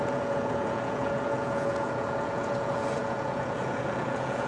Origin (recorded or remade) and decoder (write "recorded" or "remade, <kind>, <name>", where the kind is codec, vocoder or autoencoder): remade, vocoder, Vocos